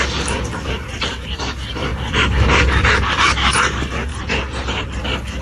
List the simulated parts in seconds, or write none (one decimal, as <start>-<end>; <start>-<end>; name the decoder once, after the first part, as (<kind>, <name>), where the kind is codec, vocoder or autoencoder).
0.0-4.1 (codec, DAC); 5.0-5.4